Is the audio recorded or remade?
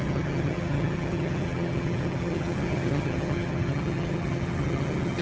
remade